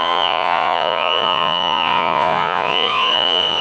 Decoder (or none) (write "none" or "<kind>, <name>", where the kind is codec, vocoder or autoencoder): vocoder, Vocos